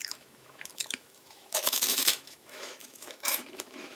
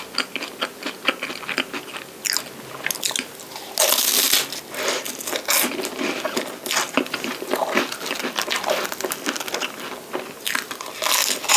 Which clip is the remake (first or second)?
first